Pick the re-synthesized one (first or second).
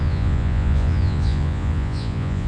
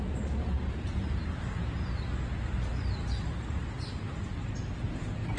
first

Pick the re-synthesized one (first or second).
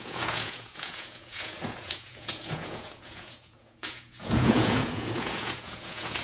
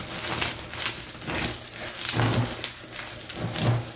first